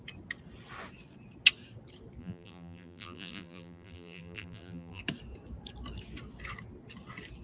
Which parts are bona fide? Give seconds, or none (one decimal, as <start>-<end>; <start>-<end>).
0.0-2.2; 5.0-7.4